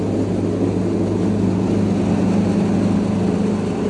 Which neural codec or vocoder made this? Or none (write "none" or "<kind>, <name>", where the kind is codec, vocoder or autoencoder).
none